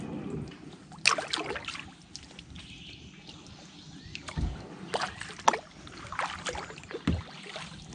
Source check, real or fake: real